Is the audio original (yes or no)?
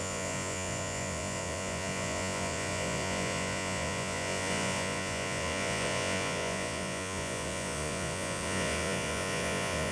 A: no